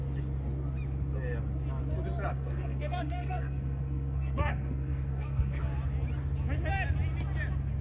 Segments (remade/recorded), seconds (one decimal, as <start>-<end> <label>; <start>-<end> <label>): 0.0-2.3 recorded; 2.3-5.6 remade; 5.6-7.8 recorded